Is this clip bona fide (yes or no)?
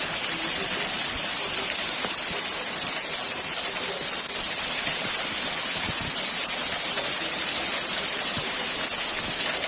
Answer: yes